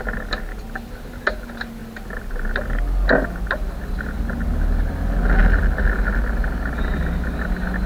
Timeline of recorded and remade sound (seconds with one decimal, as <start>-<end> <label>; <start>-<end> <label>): 0.0-7.9 recorded